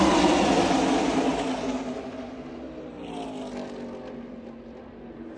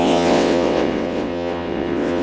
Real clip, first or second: first